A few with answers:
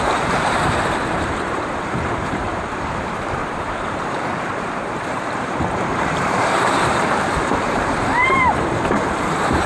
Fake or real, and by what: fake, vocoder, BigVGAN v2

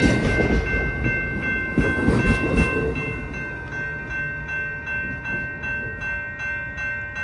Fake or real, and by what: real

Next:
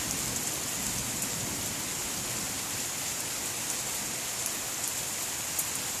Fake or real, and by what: real